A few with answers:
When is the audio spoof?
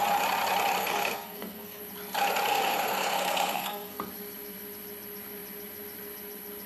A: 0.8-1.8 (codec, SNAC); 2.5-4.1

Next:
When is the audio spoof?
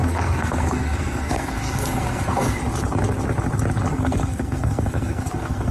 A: 0.0-2.6 (codec, SNAC); 3.9-5.7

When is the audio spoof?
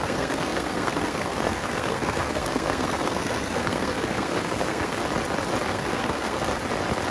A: 0.0-5.0 (codec, SNAC); 5.7-6.5